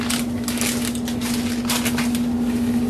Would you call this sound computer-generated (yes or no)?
no